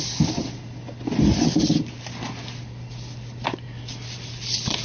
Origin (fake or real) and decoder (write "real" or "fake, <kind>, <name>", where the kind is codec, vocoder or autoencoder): real